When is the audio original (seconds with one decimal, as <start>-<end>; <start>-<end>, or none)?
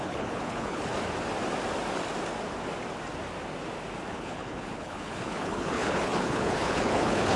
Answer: 0.9-4.1